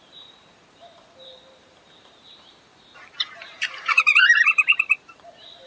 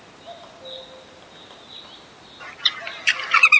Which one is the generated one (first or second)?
first